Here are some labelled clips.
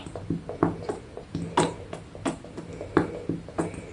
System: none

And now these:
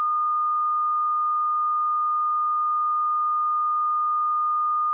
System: none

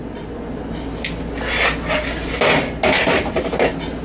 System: none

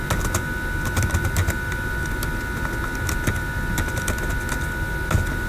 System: none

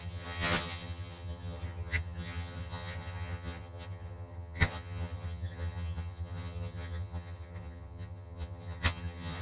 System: vocoder, HiFi-GAN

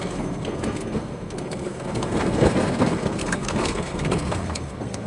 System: codec, SNAC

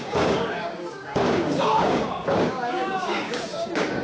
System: codec, DAC